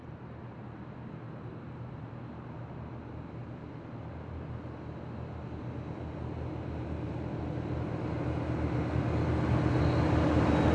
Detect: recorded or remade recorded